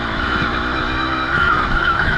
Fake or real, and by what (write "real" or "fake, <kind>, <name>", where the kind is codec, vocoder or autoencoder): fake, autoencoder, DAC-VAE